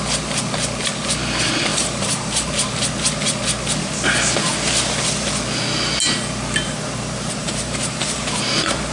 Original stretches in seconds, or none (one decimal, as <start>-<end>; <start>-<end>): 0.0-1.7; 2.5-7.4; 8.2-8.9